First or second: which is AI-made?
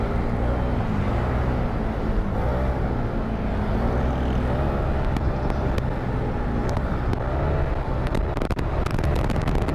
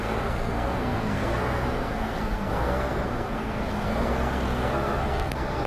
second